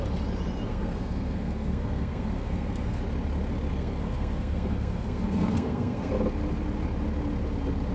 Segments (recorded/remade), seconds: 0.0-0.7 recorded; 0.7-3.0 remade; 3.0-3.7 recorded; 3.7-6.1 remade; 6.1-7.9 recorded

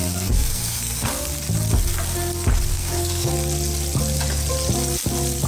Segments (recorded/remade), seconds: 0.0-1.3 remade; 1.3-2.7 recorded; 2.7-3.3 remade; 3.3-5.5 recorded

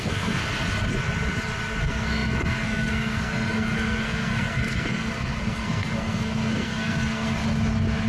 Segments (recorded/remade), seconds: 0.0-0.4 remade; 0.4-1.8 recorded; 1.8-7.4 remade; 7.4-8.1 recorded

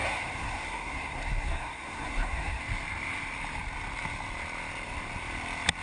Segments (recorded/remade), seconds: 0.0-2.6 remade; 2.6-5.8 recorded